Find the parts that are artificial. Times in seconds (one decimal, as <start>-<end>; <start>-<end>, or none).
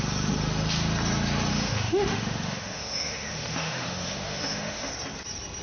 1.5-4.9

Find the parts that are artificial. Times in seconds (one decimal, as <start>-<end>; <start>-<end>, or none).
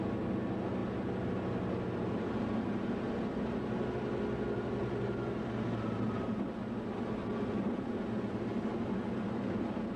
none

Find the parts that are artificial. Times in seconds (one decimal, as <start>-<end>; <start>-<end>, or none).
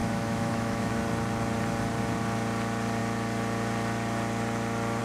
0.0-0.9